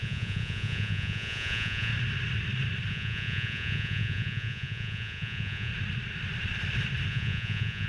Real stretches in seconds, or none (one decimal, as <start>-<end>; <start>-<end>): 1.9-2.9; 5.7-7.1